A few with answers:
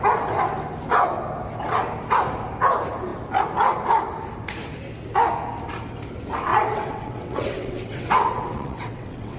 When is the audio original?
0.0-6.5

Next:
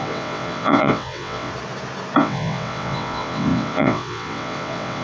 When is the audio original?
1.5-2.2

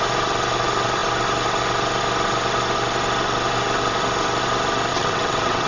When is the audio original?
0.0-4.9

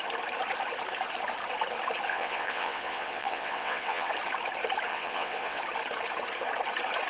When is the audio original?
0.0-2.1; 4.1-4.9; 5.6-7.1